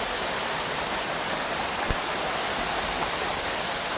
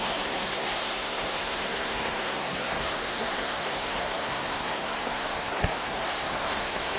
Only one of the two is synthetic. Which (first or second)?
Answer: second